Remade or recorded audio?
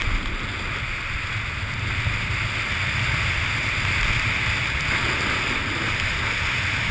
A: recorded